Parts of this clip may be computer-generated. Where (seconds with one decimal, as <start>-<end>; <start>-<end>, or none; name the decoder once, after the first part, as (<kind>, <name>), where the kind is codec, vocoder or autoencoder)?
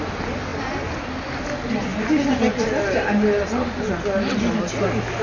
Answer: none